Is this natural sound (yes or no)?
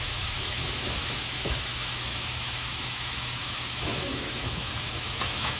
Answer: no